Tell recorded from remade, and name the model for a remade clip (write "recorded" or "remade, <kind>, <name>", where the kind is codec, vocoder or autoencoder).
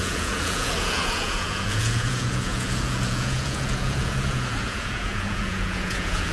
remade, vocoder, Vocos